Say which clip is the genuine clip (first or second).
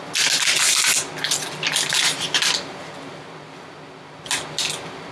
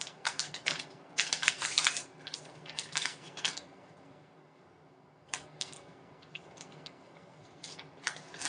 first